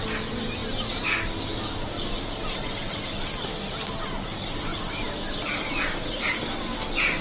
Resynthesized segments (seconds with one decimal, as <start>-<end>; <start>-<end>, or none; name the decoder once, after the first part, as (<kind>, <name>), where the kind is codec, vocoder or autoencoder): 4.7-5.2 (vocoder, BigVGAN v2)